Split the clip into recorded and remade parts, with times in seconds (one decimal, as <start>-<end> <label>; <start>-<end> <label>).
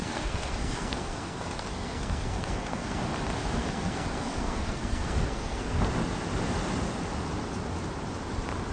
0.0-3.0 remade; 3.0-3.6 recorded; 3.6-5.8 remade; 5.8-8.7 recorded